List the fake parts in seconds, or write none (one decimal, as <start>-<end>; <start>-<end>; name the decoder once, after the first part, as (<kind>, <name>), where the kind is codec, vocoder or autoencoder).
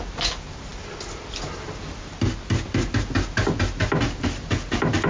none